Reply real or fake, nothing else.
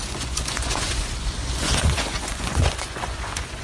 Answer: fake